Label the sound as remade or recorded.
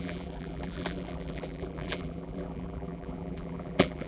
remade